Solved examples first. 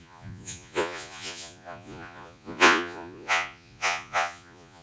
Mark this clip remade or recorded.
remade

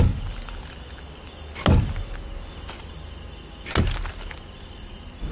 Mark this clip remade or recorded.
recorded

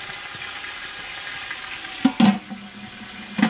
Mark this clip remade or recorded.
recorded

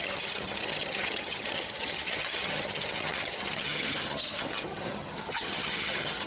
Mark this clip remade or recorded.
remade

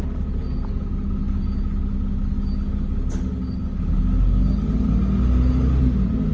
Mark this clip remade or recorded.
recorded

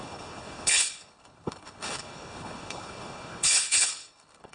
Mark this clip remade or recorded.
remade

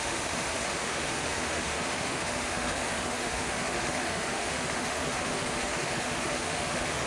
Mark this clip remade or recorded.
remade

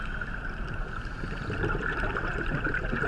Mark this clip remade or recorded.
recorded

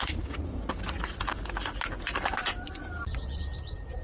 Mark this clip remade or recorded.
recorded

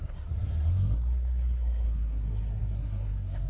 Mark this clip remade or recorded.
remade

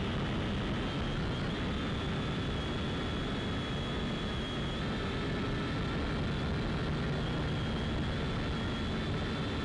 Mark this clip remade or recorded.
recorded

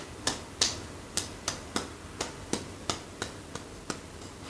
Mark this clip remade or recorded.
recorded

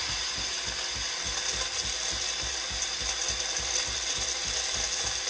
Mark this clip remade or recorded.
recorded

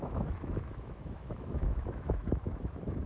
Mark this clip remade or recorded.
remade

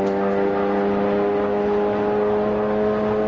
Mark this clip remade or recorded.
recorded